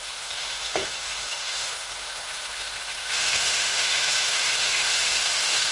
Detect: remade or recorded remade